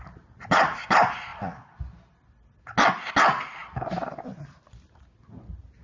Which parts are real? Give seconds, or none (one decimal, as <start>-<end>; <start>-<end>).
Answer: 0.0-5.8